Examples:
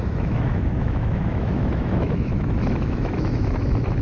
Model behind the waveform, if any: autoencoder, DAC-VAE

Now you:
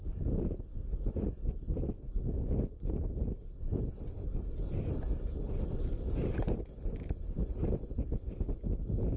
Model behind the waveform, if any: none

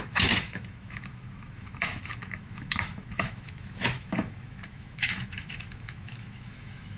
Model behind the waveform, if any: autoencoder, DAC-VAE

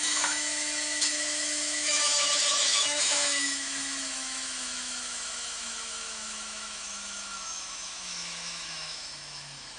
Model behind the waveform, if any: autoencoder, DAC-VAE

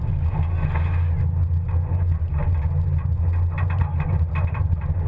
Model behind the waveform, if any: none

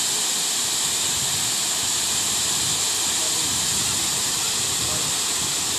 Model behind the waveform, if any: none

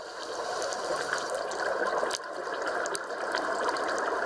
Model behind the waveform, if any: none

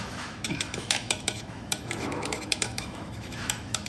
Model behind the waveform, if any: autoencoder, DAC-VAE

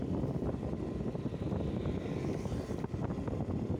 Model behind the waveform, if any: none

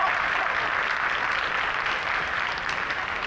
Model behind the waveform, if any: none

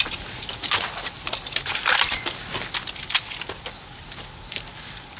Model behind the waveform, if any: none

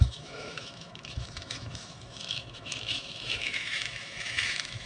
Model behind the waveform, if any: autoencoder, DAC-VAE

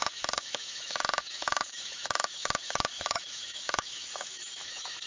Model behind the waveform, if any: autoencoder, DAC-VAE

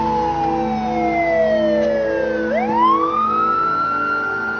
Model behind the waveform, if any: none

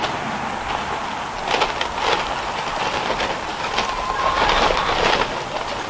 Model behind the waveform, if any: none